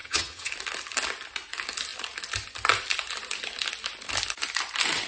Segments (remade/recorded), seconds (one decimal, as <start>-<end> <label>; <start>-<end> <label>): 0.0-0.5 remade; 0.5-5.1 recorded